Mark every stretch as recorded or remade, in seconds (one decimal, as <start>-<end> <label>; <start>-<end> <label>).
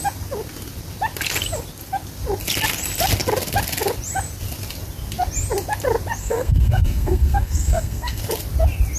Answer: 0.0-6.2 recorded; 6.2-8.2 remade; 8.2-9.0 recorded